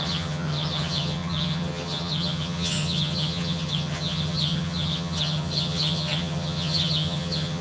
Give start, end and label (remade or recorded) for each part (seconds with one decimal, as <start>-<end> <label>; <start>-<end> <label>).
0.0-7.6 remade